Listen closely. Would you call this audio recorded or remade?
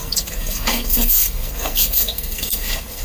remade